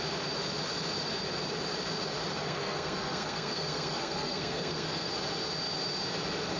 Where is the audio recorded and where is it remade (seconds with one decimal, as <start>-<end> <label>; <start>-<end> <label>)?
0.0-2.4 recorded; 2.4-5.1 remade; 5.1-6.6 recorded